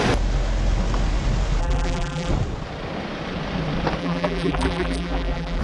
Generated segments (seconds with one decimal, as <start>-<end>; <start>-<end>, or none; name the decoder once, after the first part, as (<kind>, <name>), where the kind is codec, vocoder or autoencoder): 1.6-2.3 (vocoder, BigVGAN v2); 4.0-5.6